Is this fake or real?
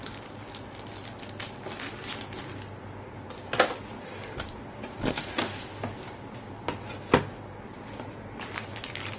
real